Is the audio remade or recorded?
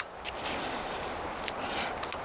recorded